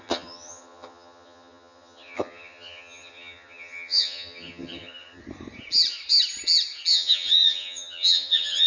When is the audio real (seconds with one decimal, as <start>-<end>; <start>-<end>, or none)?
5.2-6.9